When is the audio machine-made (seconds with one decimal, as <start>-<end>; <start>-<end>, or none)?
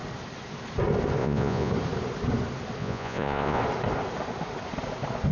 1.2-1.7; 2.8-3.6